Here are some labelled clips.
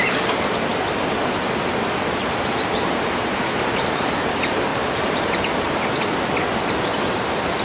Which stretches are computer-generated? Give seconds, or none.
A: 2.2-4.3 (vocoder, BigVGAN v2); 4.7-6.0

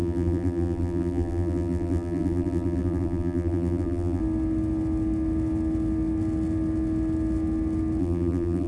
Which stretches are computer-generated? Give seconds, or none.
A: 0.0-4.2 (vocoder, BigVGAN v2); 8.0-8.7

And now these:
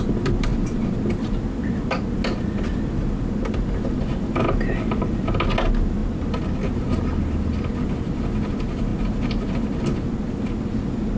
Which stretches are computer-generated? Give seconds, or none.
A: none